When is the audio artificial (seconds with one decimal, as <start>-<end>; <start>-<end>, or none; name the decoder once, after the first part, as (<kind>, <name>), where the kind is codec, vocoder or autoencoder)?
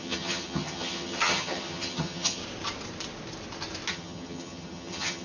0.0-2.4 (vocoder, HiFi-GAN); 3.9-5.2